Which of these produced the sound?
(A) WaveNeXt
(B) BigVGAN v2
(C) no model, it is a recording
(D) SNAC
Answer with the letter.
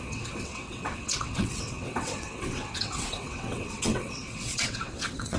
A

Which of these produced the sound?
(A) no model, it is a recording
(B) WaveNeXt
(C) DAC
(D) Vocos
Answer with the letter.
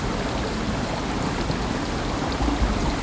A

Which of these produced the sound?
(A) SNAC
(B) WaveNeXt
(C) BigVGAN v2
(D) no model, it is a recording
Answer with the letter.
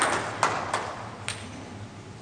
D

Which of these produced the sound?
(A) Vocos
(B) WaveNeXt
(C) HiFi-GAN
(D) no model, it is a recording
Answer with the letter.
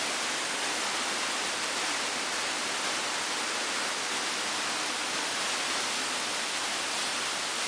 D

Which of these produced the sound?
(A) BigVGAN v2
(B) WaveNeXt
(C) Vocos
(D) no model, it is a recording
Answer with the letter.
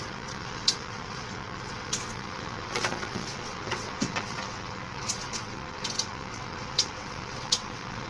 B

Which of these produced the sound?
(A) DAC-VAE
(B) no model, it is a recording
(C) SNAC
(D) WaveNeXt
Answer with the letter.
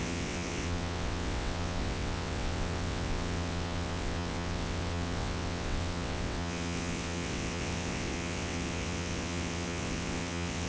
D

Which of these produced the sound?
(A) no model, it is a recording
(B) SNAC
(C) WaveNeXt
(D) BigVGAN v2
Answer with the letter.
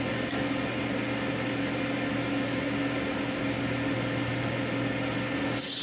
A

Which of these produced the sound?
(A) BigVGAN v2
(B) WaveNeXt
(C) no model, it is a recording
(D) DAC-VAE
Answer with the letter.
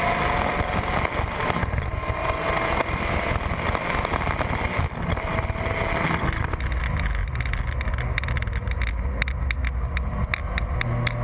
C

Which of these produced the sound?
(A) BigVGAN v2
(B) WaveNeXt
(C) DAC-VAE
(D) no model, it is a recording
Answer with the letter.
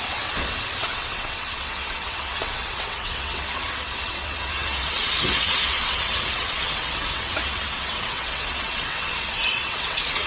B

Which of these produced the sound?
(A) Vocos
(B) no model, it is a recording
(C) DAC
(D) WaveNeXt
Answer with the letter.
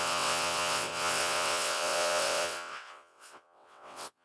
D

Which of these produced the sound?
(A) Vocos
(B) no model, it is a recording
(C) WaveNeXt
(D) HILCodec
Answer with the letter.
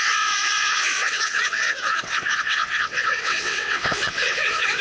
C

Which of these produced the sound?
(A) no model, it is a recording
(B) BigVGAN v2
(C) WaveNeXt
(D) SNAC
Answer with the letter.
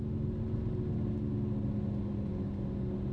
A